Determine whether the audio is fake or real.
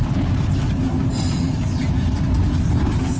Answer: real